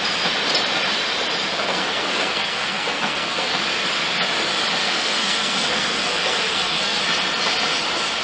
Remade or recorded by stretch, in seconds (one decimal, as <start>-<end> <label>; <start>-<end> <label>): 0.0-1.5 recorded; 1.5-3.6 remade; 3.6-4.8 recorded; 4.8-7.0 remade; 7.0-8.2 recorded